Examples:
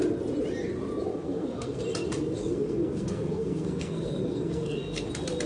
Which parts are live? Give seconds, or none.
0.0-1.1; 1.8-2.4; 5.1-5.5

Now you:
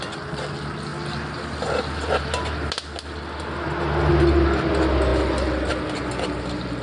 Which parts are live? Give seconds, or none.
0.0-6.8

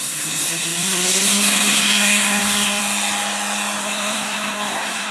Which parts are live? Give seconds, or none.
2.8-3.8

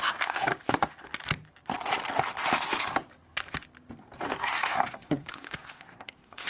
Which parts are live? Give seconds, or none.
0.5-4.4

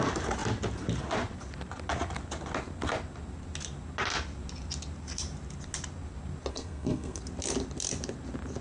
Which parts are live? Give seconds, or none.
0.0-6.5; 7.2-8.6